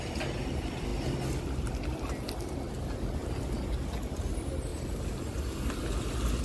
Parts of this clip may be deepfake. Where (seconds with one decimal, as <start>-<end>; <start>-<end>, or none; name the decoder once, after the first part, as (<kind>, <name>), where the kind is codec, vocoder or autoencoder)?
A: none